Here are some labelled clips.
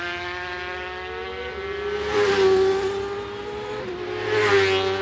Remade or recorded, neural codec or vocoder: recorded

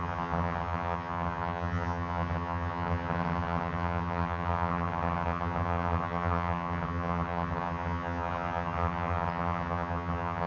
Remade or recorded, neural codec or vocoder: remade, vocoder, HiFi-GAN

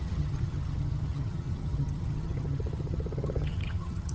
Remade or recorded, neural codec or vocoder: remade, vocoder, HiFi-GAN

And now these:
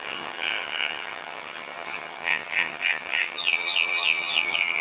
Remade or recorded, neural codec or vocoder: remade, vocoder, HiFi-GAN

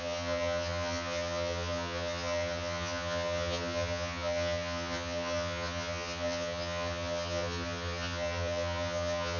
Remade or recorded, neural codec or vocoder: remade, vocoder, HiFi-GAN